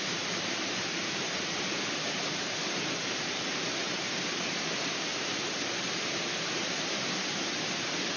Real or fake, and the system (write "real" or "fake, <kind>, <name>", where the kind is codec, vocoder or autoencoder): fake, vocoder, BigVGAN v2